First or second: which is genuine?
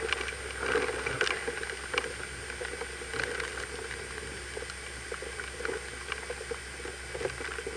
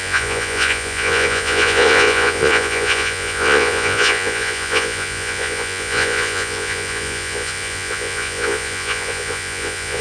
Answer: first